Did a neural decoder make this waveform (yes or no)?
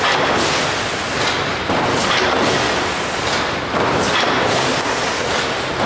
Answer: no